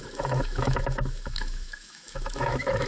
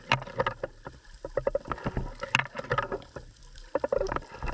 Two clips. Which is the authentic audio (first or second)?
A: second